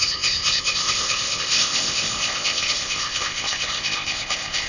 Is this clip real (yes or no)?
no